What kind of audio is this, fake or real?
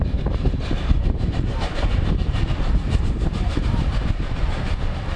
fake